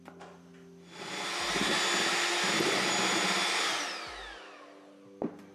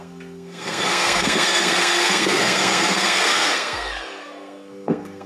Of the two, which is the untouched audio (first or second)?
first